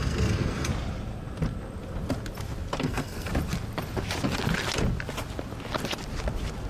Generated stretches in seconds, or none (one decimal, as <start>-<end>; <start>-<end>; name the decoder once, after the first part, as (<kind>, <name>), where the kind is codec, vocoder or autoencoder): 0.0-0.7 (codec, SNAC); 2.8-3.3